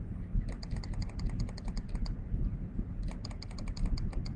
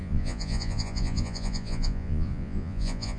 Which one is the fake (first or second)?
second